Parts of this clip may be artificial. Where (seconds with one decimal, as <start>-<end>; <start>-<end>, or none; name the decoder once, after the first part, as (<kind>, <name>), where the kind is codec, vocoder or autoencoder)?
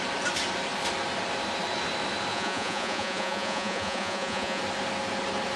2.3-4.6 (vocoder, Vocos)